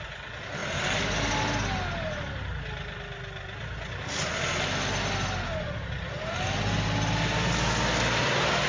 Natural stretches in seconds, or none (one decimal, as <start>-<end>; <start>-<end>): 0.0-0.6; 1.3-8.7